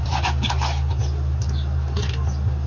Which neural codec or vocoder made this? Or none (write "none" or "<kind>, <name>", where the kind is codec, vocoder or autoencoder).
none